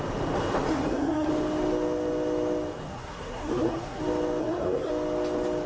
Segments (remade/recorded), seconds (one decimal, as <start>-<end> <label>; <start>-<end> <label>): 0.0-0.7 recorded; 0.7-1.3 remade; 1.3-2.9 recorded; 2.9-4.0 remade; 4.0-4.4 recorded; 4.4-4.9 remade; 4.9-5.7 recorded

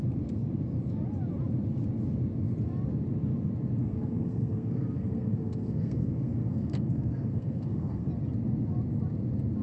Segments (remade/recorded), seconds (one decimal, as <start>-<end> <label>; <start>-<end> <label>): 0.0-3.8 recorded; 3.8-8.1 remade; 8.1-9.6 recorded

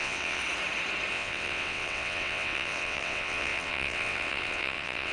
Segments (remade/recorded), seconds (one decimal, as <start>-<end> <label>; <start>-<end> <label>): 0.0-0.4 remade; 0.4-1.1 recorded; 1.1-5.1 remade

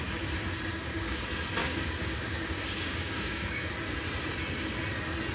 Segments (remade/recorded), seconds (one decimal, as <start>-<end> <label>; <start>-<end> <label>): 0.0-0.7 recorded; 0.7-1.2 remade; 1.2-1.6 recorded; 1.6-3.7 remade; 3.7-5.3 recorded